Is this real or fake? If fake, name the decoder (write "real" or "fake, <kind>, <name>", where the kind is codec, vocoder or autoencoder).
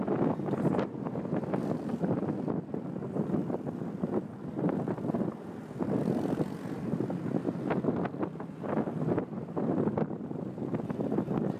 real